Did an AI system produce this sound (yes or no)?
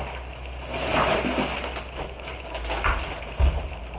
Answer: no